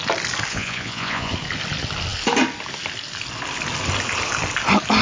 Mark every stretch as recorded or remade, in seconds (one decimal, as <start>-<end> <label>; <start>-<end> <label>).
0.0-0.5 recorded; 0.5-1.3 remade; 1.3-5.0 recorded